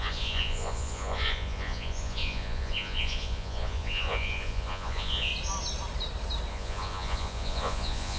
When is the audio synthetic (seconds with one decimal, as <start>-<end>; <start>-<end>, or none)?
0.0-5.3; 6.5-8.2